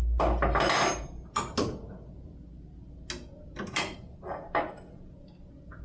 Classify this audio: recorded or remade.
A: recorded